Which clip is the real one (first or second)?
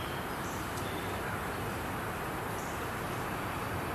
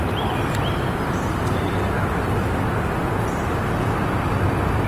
second